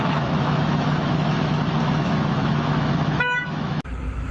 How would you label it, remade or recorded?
remade